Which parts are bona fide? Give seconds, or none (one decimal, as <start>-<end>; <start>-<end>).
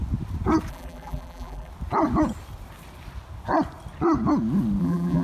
0.0-0.7; 1.7-4.8